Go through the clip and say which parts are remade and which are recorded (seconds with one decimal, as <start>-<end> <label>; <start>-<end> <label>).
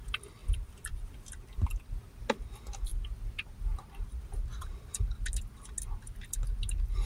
0.0-0.4 recorded; 0.4-2.2 remade; 2.2-7.1 recorded